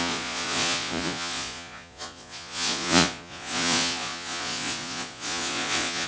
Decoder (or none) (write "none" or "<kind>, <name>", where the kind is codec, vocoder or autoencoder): vocoder, Vocos